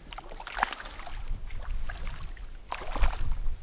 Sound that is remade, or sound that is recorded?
recorded